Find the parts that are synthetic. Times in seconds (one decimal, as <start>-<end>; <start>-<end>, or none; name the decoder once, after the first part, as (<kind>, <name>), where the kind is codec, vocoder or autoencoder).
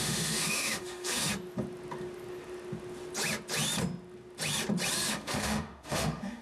0.0-1.3 (autoencoder, DAC-VAE); 5.1-6.4